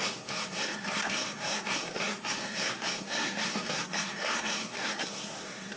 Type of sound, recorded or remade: remade